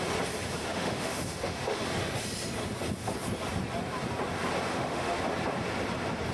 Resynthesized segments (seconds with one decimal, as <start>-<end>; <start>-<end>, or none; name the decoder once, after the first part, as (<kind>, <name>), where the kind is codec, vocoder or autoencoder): 0.6-1.8 (autoencoder, DAC-VAE); 4.7-5.2